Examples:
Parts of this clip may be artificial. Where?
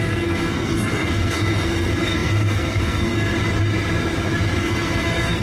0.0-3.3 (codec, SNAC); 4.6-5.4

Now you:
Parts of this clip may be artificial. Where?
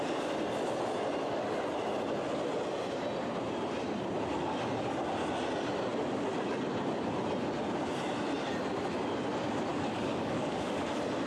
9.7-10.9 (codec, DAC)